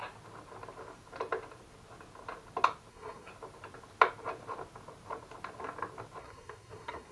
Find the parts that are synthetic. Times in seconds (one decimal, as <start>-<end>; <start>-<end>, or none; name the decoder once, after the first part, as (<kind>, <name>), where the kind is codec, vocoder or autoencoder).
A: 2.9-3.3 (codec, SNAC); 6.2-7.1